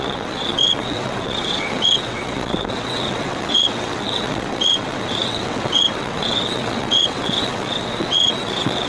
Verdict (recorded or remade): remade